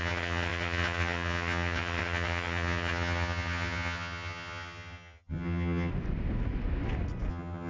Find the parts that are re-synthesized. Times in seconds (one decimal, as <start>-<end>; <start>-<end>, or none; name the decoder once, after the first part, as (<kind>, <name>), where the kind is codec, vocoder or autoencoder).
0.0-5.9 (vocoder, HiFi-GAN); 7.3-7.7